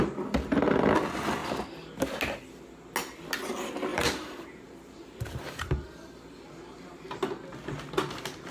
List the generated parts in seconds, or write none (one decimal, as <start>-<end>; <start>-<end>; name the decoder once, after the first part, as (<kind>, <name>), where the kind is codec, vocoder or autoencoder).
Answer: 3.9-6.9 (vocoder, BigVGAN v2)